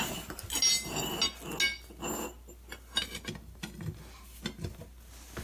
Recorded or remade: recorded